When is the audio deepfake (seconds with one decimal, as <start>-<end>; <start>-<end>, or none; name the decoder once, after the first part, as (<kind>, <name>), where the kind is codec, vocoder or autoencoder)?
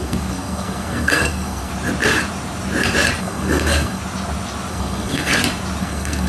0.0-1.7 (codec, SNAC); 3.2-4.0; 4.7-5.3; 5.8-6.3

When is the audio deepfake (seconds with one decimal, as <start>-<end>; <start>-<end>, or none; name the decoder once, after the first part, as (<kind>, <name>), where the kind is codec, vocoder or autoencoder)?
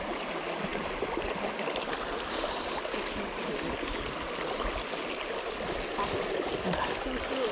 none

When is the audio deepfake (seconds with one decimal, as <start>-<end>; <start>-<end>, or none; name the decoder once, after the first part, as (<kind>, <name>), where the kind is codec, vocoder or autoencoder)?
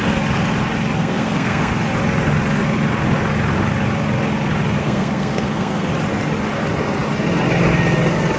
1.0-1.7 (codec, SNAC); 4.8-5.9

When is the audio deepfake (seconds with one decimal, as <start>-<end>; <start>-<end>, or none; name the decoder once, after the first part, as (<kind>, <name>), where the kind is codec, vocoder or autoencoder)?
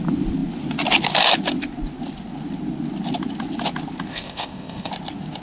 4.1-4.9 (codec, ZipCodec)